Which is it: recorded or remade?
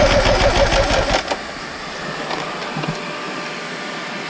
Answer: recorded